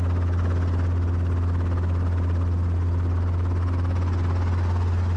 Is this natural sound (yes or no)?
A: yes